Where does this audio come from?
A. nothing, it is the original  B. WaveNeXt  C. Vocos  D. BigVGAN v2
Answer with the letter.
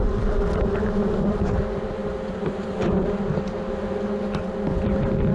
A